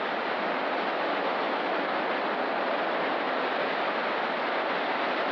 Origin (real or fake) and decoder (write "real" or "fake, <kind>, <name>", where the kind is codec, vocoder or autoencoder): real